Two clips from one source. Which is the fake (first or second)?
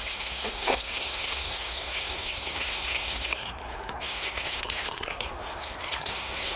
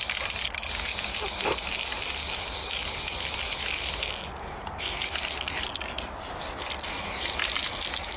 first